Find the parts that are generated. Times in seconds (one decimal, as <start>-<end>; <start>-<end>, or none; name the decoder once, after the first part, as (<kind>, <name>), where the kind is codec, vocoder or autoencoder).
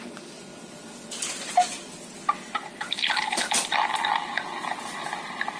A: none